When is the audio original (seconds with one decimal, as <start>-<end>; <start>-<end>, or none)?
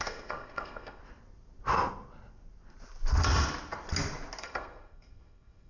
1.0-4.4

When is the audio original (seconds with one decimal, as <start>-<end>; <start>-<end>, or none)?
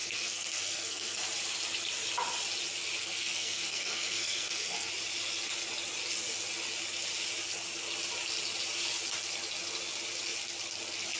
1.2-3.0; 4.9-11.2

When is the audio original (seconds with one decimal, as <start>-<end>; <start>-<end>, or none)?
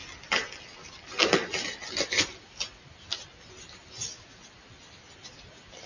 0.0-5.9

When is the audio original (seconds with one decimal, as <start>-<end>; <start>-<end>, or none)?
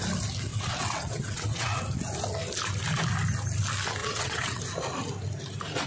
0.0-0.5; 1.8-4.0; 4.6-5.9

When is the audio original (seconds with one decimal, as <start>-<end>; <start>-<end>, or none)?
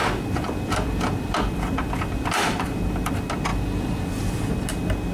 3.1-3.5; 4.5-5.1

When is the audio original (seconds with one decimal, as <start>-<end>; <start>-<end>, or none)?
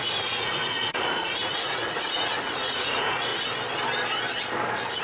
3.3-5.0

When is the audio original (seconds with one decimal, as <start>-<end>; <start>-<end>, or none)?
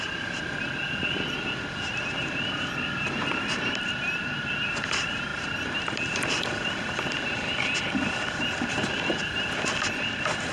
0.0-10.5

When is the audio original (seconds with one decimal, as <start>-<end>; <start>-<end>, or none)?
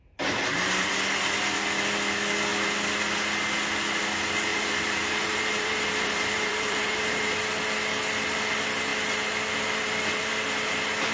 0.0-4.5; 7.3-11.1